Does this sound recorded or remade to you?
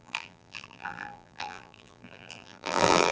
remade